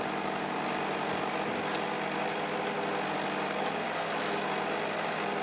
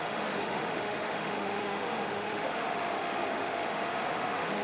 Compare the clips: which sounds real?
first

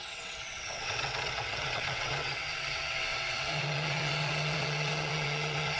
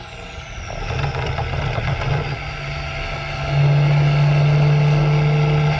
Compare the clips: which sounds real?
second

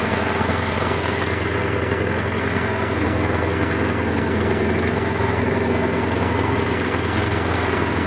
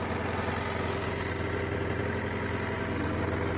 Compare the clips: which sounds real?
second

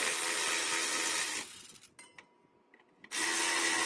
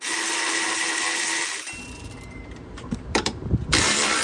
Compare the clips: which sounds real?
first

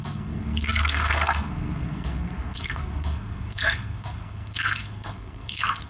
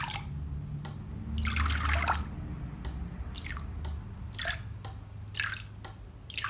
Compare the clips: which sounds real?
second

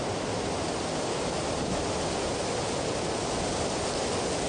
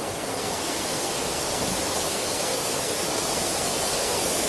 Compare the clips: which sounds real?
first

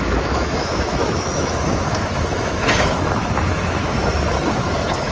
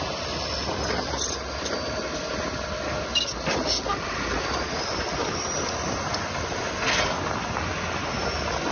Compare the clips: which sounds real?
second